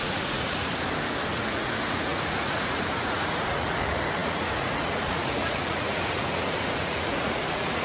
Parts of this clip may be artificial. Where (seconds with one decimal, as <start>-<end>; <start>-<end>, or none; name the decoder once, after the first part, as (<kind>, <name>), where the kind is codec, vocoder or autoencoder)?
0.0-0.7 (vocoder, Vocos); 1.3-7.8